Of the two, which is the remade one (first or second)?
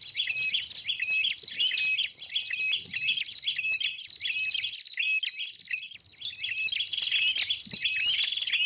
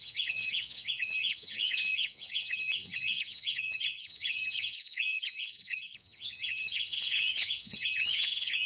second